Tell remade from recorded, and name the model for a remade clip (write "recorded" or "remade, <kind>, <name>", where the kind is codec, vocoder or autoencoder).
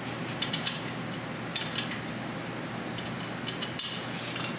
recorded